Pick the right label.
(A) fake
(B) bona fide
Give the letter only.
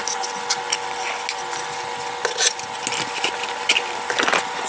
B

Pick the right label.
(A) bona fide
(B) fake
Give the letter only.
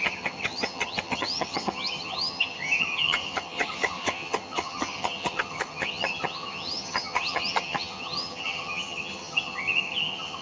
B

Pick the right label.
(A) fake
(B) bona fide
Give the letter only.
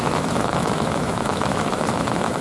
A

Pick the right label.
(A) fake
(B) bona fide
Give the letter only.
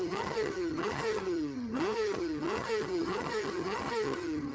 A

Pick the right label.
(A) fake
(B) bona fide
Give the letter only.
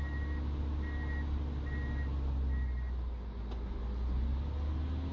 B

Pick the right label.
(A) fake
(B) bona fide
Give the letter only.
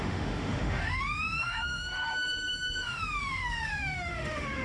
A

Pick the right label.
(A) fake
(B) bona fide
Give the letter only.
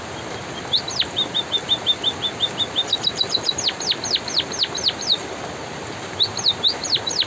B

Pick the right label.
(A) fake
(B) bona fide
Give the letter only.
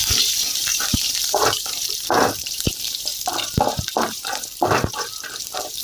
A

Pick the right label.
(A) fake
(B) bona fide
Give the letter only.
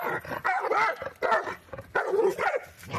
B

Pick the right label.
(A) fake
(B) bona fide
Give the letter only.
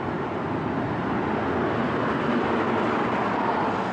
B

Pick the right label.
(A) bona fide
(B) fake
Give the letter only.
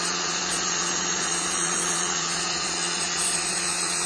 B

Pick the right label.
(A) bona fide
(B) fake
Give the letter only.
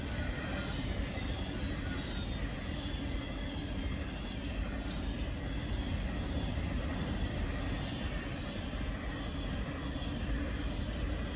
A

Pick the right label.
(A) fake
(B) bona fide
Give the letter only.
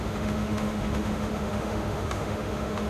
A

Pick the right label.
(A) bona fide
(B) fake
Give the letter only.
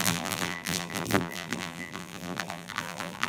B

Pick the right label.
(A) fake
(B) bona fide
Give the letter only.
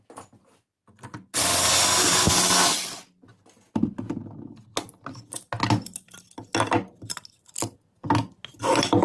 B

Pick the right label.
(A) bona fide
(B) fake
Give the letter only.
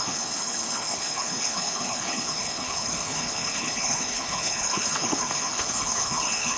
B